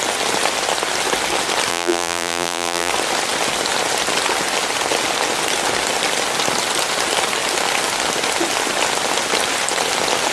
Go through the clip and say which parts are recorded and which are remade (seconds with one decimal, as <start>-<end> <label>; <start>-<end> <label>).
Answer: 0.0-1.7 recorded; 1.7-2.9 remade; 2.9-10.3 recorded